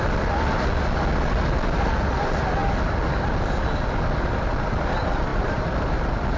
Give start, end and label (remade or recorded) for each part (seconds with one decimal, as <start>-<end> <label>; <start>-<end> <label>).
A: 0.0-5.3 recorded; 5.3-5.9 remade; 5.9-6.4 recorded